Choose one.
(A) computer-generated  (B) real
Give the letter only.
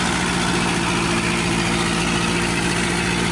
B